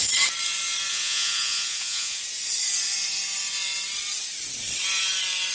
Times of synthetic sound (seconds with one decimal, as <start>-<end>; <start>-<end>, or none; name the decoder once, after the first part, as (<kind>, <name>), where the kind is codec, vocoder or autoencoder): 0.9-2.2 (vocoder, Vocos)